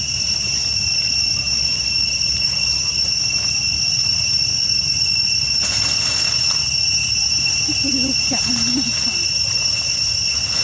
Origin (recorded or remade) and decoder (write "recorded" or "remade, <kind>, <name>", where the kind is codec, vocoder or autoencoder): recorded